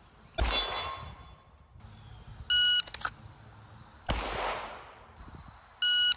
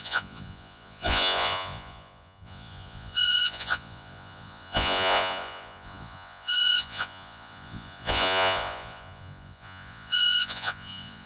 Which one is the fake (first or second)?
second